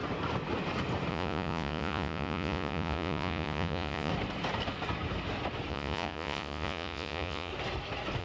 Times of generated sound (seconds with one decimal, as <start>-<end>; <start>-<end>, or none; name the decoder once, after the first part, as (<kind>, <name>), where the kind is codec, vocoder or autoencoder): 1.1-4.1 (vocoder, Vocos); 5.7-7.5